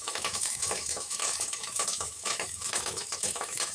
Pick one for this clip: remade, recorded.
remade